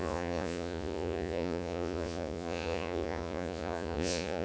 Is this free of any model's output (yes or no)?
no